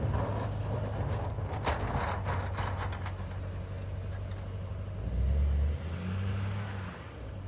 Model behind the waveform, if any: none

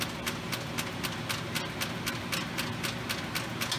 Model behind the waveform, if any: none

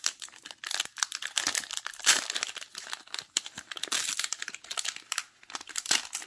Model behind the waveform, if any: none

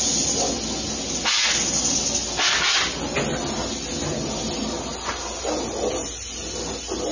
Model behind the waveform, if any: none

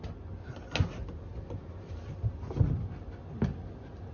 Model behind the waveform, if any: none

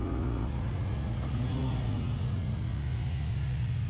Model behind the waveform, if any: vocoder, Vocos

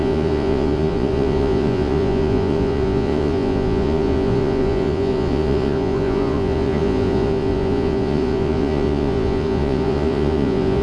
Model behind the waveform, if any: vocoder, Vocos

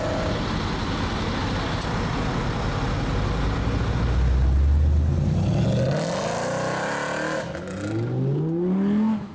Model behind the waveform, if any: none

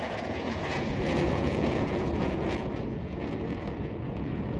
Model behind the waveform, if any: vocoder, Vocos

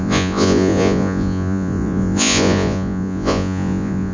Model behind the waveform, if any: vocoder, Vocos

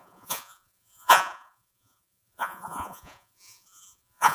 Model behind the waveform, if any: vocoder, Vocos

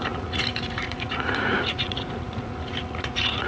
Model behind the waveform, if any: vocoder, Vocos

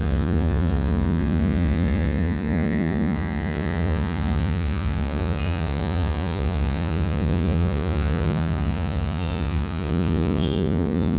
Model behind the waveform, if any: vocoder, Vocos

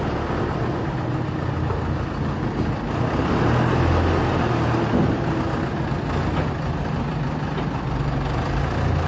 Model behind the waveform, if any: none